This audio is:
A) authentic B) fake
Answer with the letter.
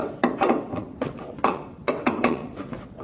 B